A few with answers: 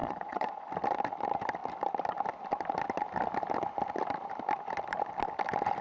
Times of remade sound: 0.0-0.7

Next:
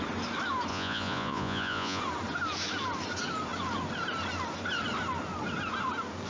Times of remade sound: 0.7-2.0

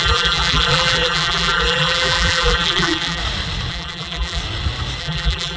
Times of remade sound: 0.0-3.2; 3.7-4.4; 5.0-5.6

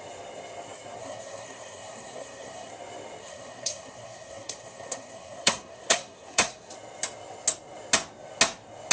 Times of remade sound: 1.0-2.7; 3.2-6.7